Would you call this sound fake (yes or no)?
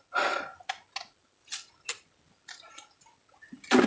no